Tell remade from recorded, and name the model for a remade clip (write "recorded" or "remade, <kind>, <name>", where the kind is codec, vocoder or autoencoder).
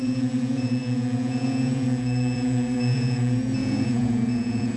remade, vocoder, Vocos